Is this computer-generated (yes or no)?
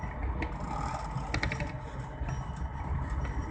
no